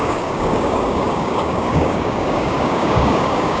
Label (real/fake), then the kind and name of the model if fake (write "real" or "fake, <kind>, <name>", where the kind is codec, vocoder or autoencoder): fake, codec, DAC